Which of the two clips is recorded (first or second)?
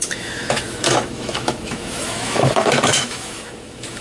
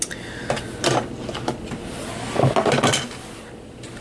second